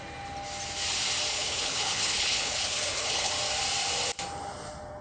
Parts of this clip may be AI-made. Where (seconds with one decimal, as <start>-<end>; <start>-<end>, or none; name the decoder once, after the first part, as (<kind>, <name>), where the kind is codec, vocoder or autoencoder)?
1.3-3.3 (codec, HILCodec)